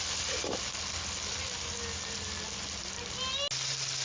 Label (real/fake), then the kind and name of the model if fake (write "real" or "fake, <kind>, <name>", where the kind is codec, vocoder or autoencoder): real